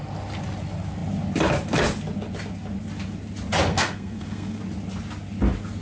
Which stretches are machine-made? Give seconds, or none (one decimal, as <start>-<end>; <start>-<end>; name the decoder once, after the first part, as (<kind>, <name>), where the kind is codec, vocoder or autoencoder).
3.7-4.6 (codec, SNAC)